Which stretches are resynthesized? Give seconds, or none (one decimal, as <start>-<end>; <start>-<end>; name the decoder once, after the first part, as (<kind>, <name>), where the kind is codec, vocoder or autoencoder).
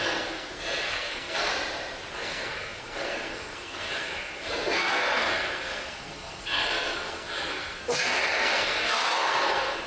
0.0-1.5 (codec, SNAC); 2.1-9.9